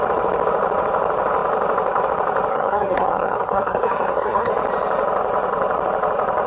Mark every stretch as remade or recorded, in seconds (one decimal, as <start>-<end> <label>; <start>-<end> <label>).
0.0-2.5 recorded; 2.5-4.5 remade; 4.5-6.5 recorded